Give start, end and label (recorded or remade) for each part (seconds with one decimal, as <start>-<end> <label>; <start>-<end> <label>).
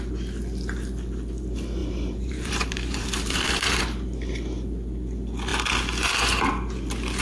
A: 0.0-1.8 recorded; 1.8-3.8 remade; 3.8-7.2 recorded